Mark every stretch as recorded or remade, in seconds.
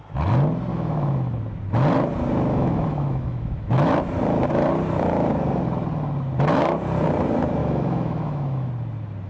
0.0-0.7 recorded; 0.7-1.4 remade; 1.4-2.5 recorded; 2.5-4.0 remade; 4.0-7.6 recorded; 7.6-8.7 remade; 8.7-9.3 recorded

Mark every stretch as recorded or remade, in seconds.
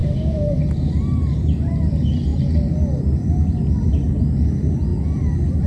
0.0-0.6 remade; 0.6-5.7 recorded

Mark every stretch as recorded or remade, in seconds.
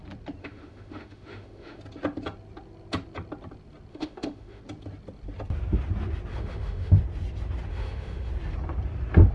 0.0-0.4 recorded; 0.4-1.8 remade; 1.8-3.9 recorded; 3.9-4.6 remade; 4.6-6.3 recorded; 6.3-7.0 remade; 7.0-7.7 recorded; 7.7-8.3 remade; 8.3-9.3 recorded